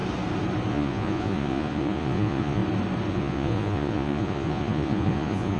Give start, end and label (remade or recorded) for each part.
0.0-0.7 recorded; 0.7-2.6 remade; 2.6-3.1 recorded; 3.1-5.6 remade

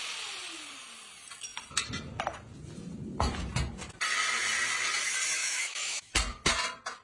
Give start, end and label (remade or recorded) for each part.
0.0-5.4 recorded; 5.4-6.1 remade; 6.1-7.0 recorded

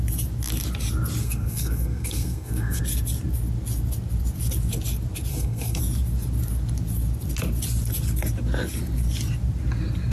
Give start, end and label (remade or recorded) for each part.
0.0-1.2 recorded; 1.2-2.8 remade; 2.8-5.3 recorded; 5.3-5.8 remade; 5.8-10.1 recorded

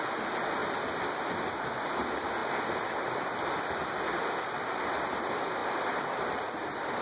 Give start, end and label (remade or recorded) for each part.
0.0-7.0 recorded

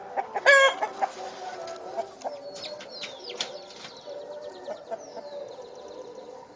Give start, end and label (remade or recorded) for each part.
0.0-6.6 recorded

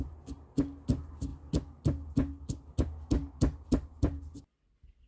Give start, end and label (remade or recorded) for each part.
0.0-5.1 recorded

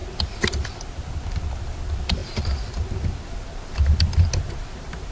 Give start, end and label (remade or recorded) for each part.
0.0-5.1 recorded

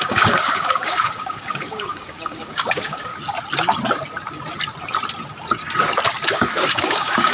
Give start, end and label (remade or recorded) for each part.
0.0-3.1 remade; 3.1-6.3 recorded; 6.3-7.3 remade